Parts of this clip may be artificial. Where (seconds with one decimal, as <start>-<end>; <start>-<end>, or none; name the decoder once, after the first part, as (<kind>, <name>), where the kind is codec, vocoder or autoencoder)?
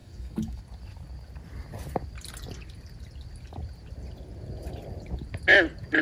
0.0-0.6 (codec, DAC)